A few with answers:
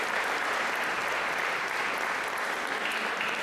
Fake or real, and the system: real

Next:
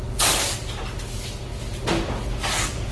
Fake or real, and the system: real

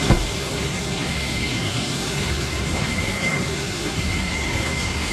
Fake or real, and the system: fake, codec, SNAC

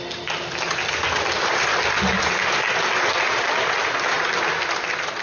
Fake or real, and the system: real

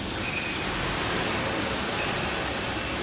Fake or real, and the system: real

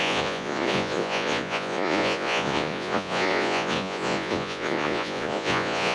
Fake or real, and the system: fake, vocoder, Vocos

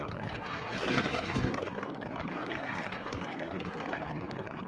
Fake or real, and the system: fake, codec, SNAC